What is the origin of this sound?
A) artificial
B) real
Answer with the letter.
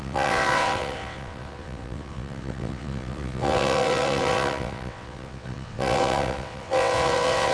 A